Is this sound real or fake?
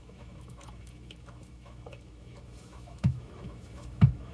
fake